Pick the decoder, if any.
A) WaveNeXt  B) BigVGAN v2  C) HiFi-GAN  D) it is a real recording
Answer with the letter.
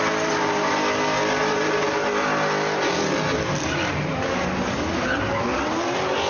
D